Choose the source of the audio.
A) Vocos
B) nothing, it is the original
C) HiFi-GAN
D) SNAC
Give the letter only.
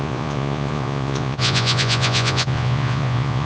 A